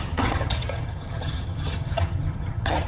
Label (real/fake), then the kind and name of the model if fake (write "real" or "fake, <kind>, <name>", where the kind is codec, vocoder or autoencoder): fake, vocoder, HiFi-GAN